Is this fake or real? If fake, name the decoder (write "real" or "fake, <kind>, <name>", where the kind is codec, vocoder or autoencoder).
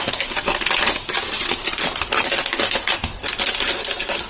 real